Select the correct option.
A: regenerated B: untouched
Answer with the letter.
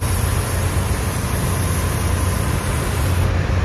B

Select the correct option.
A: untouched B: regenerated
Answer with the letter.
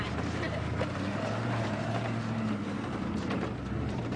A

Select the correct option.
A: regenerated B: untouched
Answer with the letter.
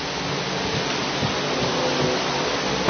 B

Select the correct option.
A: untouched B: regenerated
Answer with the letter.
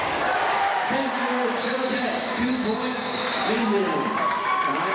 B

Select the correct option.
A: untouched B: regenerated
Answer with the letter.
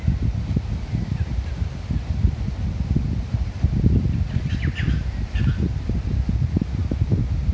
A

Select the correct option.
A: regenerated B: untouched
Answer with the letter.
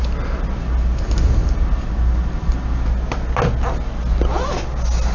B